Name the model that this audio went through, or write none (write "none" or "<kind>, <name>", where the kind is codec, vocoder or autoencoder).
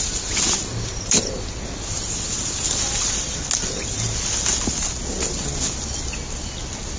none